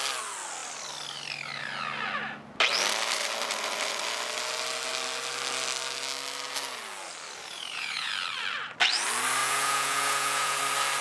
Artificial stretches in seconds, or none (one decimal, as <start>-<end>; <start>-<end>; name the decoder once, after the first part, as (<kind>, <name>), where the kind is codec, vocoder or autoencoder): 7.5-8.1 (vocoder, Vocos); 9.4-10.6